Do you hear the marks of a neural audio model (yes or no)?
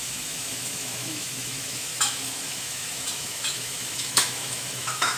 yes